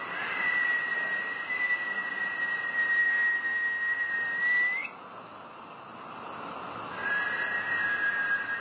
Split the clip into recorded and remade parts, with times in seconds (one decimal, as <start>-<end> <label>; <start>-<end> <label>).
0.0-3.0 recorded; 3.0-4.1 remade; 4.1-8.6 recorded